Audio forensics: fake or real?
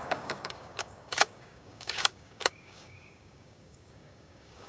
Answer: fake